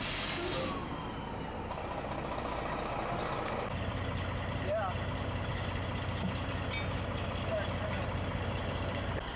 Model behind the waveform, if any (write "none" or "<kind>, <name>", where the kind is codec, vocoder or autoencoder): none